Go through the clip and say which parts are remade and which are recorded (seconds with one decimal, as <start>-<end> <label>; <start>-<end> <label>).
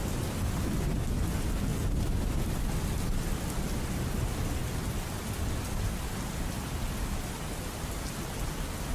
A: 0.0-8.9 recorded